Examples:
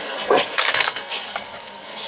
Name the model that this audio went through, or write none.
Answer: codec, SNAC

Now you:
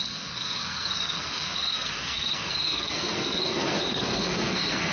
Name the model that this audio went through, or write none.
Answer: codec, SNAC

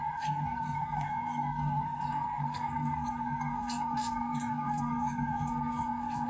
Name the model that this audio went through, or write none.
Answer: codec, SNAC